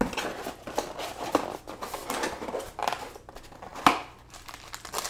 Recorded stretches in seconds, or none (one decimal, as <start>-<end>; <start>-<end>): 0.0-5.1